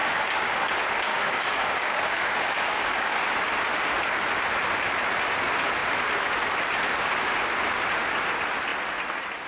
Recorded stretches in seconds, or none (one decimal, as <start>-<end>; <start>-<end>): 0.7-1.1; 3.3-9.5